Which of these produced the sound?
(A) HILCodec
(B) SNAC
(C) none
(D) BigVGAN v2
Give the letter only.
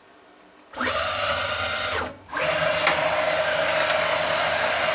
C